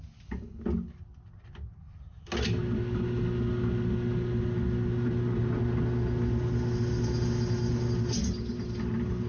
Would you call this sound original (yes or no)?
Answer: yes